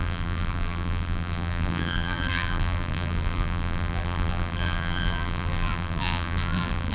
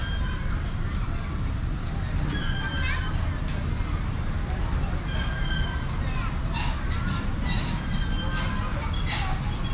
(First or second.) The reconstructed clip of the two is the first